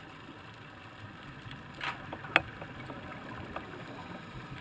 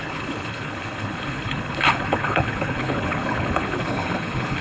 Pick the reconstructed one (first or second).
second